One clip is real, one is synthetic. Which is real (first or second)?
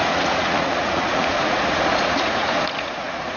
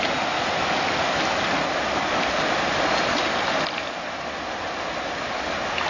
second